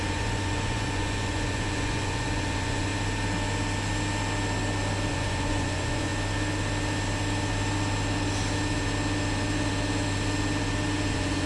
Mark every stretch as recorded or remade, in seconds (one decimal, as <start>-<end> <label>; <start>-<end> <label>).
0.0-2.9 remade; 2.9-5.1 recorded; 5.1-6.1 remade; 6.1-11.1 recorded; 11.1-11.5 remade

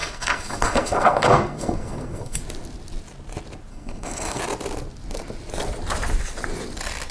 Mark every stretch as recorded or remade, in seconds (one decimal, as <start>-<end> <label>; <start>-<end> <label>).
0.0-2.4 remade; 2.4-3.7 recorded; 3.7-4.4 remade; 4.4-7.1 recorded

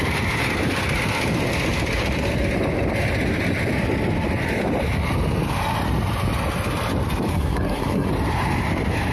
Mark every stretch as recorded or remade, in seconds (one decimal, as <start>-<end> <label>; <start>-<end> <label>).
0.0-7.3 recorded; 7.3-8.1 remade; 8.1-9.1 recorded

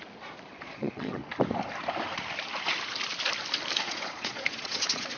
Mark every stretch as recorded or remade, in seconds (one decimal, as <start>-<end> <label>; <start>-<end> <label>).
0.0-0.5 recorded; 0.5-1.2 remade; 1.2-3.8 recorded; 3.8-5.2 remade

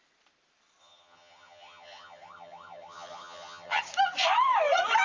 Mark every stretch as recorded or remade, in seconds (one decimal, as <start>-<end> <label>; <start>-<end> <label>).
0.0-0.8 recorded; 0.8-3.8 remade; 3.8-5.0 recorded